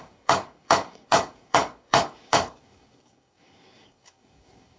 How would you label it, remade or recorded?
remade